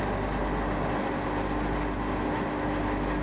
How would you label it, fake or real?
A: real